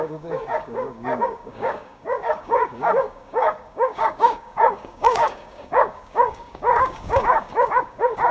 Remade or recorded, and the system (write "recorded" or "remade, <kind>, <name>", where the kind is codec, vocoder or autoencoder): remade, codec, DAC